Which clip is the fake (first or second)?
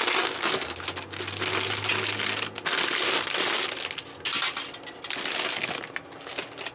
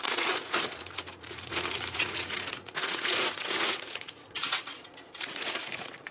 second